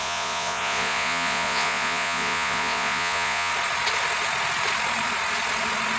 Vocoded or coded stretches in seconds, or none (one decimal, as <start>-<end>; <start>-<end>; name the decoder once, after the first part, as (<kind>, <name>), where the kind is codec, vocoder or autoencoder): 0.0-3.5 (vocoder, Vocos)